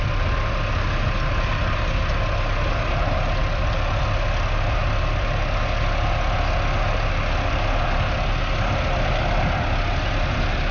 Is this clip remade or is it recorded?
recorded